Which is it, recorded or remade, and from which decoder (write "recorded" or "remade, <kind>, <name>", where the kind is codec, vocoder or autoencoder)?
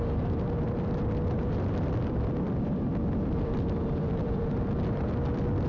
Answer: remade, vocoder, BigVGAN v2